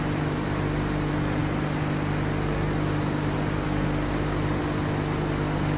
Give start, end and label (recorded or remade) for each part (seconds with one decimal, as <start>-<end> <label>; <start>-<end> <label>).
0.0-5.8 recorded